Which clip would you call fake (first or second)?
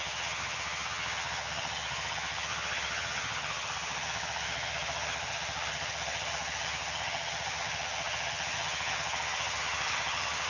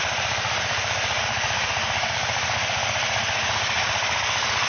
first